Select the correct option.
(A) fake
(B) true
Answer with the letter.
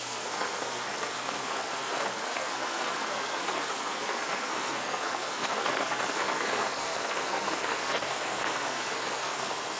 A